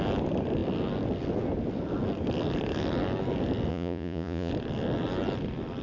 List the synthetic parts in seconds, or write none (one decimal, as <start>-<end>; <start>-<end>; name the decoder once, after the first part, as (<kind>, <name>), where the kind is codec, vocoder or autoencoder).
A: 3.7-4.5 (vocoder, Vocos)